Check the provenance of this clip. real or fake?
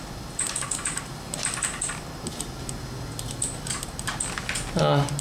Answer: real